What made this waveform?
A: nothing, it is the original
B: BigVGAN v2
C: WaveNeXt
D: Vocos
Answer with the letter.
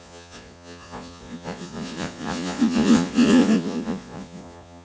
D